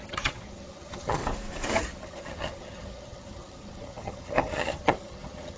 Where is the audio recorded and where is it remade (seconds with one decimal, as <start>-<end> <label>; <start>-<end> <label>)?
0.0-1.2 remade; 1.2-1.8 recorded; 1.8-5.6 remade